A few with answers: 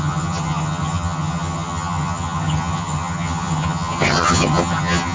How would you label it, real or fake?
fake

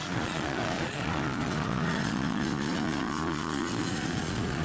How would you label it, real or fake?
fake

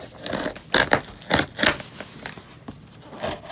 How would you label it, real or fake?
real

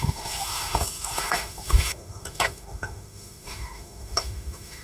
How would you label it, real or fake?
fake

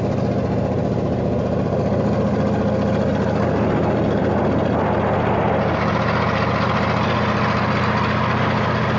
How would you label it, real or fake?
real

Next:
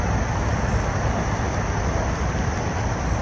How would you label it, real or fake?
real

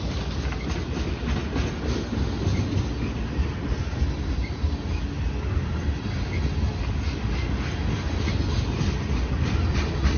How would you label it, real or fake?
real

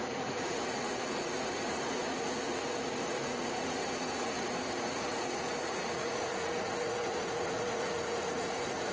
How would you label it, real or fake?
fake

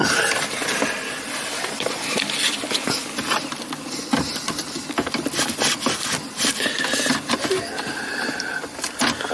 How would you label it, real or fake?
real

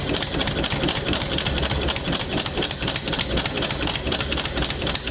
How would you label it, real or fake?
real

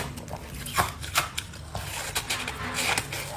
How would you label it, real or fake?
real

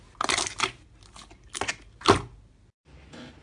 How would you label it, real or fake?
real